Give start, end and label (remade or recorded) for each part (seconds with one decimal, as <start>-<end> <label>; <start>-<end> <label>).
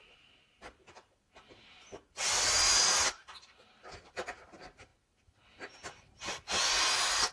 0.0-7.3 recorded